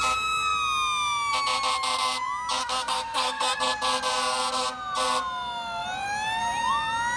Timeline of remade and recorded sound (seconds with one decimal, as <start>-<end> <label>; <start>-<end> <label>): 0.0-2.6 recorded; 2.6-3.6 remade; 3.6-7.2 recorded

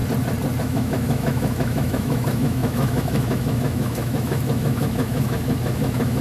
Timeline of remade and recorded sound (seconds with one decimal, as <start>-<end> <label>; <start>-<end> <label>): 0.0-0.6 recorded; 0.6-6.2 remade

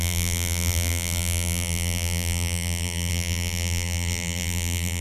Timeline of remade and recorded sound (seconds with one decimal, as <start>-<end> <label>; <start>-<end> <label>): 0.0-5.0 remade

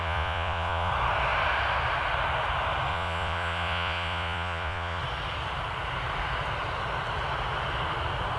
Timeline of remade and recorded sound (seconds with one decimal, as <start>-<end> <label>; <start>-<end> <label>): 0.0-0.9 remade; 0.9-2.9 recorded; 2.9-5.0 remade; 5.0-8.4 recorded